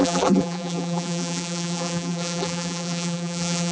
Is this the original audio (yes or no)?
no